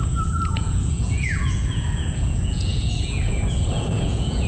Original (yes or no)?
no